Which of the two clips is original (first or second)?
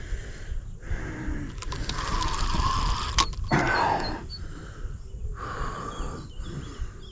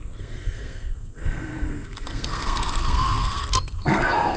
first